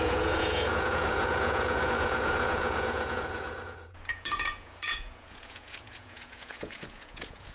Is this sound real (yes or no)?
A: no